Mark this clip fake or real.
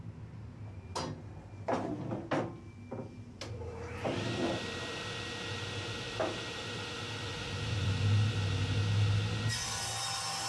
real